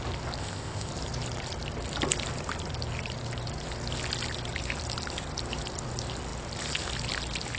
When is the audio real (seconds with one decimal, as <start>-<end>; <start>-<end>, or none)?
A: 0.0-0.4; 0.9-7.6